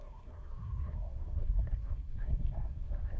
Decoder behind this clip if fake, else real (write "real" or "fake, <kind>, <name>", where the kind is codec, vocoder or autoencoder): fake, codec, SNAC